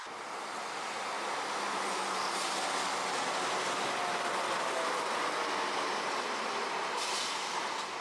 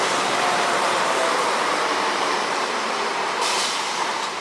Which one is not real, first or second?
second